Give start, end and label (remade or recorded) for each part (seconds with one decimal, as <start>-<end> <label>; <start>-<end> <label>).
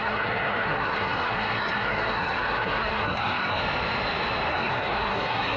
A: 0.0-3.6 remade; 3.6-4.5 recorded; 4.5-5.6 remade